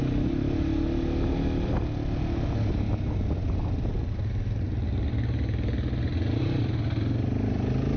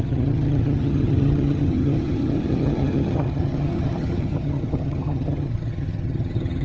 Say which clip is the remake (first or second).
second